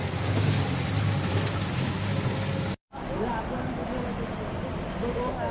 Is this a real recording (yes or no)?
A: yes